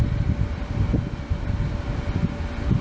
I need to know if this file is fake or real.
real